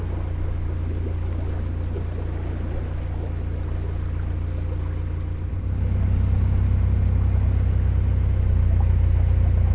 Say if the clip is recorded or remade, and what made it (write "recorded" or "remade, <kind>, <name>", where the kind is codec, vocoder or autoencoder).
recorded